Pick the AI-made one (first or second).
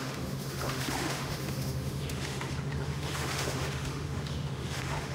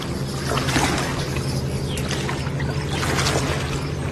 first